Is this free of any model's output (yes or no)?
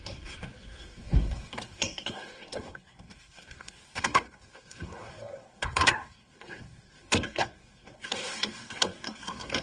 no